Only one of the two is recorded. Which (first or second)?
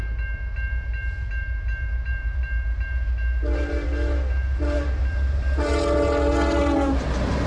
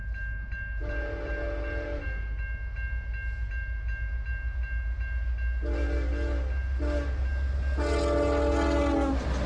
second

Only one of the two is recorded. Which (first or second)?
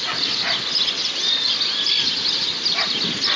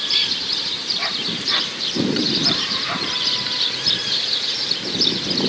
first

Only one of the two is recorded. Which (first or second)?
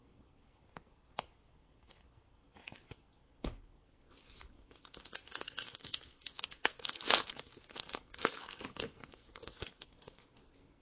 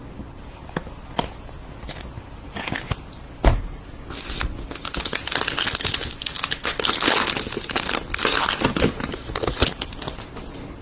second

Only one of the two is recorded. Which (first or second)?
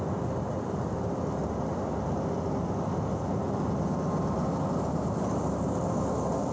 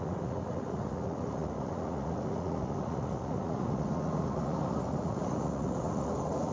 first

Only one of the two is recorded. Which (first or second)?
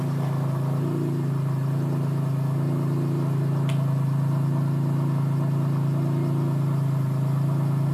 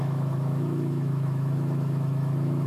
first